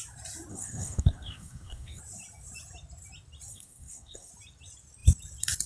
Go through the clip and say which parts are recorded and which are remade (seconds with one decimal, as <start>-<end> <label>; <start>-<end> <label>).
0.0-0.5 recorded; 0.5-2.0 remade; 2.0-3.5 recorded; 3.5-4.3 remade; 4.3-5.7 recorded

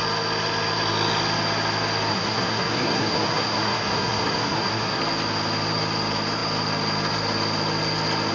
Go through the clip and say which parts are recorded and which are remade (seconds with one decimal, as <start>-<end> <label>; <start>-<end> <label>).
0.0-2.1 recorded; 2.1-5.0 remade; 5.0-8.3 recorded

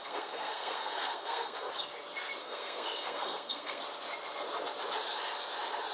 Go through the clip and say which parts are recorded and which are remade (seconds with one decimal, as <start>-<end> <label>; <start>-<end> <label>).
0.0-1.7 remade; 1.7-2.4 recorded; 2.4-3.8 remade; 3.8-5.9 recorded

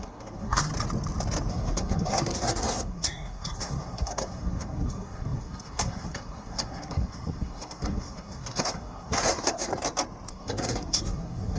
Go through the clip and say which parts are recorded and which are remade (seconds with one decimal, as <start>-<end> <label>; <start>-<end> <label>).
0.0-0.7 remade; 0.7-1.5 recorded; 1.5-9.7 remade; 9.7-10.3 recorded; 10.3-11.6 remade

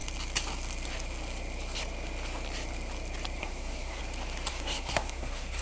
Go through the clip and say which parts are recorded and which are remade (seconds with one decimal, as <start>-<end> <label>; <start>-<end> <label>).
0.0-3.4 recorded; 3.4-4.0 remade; 4.0-4.5 recorded; 4.5-5.6 remade

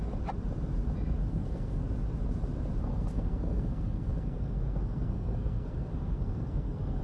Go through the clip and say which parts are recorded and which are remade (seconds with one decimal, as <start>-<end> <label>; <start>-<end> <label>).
0.0-1.3 recorded; 1.3-1.8 remade; 1.8-2.8 recorded; 2.8-7.0 remade

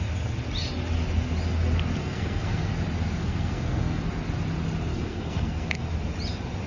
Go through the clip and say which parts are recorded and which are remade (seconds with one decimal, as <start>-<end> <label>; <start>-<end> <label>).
0.0-2.0 recorded; 2.0-2.7 remade; 2.7-3.2 recorded; 3.2-4.0 remade; 4.0-4.9 recorded; 4.9-5.9 remade; 5.9-6.7 recorded

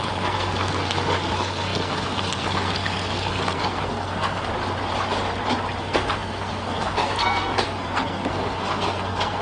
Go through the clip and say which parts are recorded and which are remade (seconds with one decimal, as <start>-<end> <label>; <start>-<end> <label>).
0.0-4.5 remade; 4.5-5.8 recorded; 5.8-9.4 remade